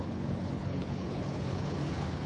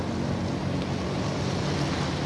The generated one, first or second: first